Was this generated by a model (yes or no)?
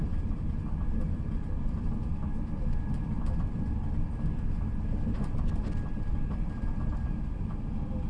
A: yes